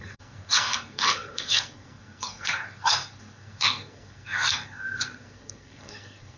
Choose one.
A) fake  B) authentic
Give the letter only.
A